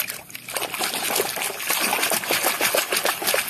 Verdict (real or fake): real